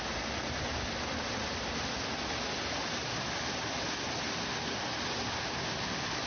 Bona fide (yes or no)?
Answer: yes